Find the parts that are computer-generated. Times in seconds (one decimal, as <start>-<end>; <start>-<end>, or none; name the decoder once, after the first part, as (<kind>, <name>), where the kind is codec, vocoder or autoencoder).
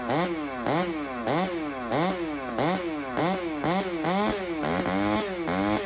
none